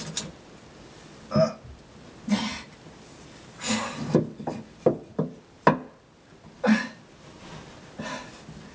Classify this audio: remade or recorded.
recorded